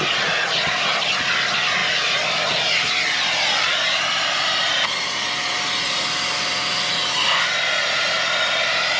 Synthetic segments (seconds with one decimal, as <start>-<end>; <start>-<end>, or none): none